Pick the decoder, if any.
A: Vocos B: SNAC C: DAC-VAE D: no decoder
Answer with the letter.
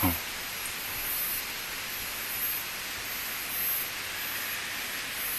D